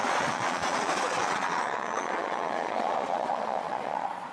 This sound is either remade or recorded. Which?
remade